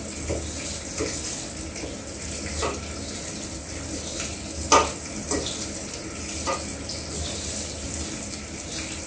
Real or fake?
real